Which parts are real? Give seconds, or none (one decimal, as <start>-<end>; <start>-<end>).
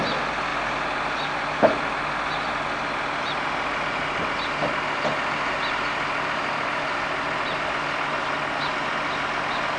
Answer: 0.0-9.8